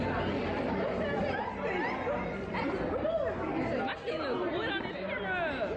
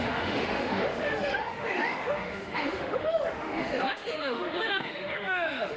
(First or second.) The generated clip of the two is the second